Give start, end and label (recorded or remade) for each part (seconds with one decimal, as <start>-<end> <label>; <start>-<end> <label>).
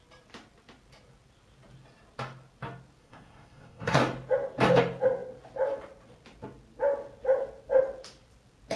0.0-3.0 recorded; 3.0-4.0 remade; 4.0-8.8 recorded